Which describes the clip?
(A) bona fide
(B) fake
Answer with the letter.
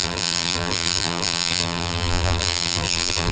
B